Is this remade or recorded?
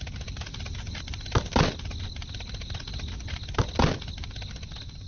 recorded